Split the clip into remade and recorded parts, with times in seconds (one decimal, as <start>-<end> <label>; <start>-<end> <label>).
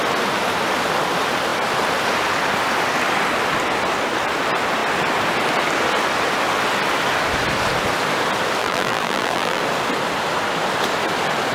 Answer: 0.0-8.6 recorded; 8.6-9.6 remade; 9.6-11.5 recorded